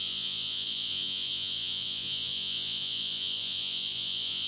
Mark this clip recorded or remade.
remade